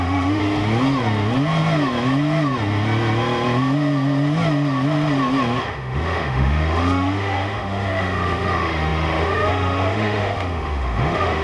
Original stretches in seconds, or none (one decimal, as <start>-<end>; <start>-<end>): 0.4-5.6